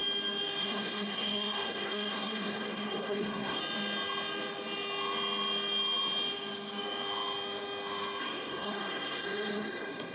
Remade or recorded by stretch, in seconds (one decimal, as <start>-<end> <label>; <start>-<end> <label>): 0.0-0.6 recorded; 0.6-3.6 remade; 3.6-8.2 recorded; 8.2-10.1 remade